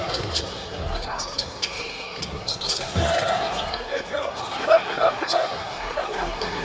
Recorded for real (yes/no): no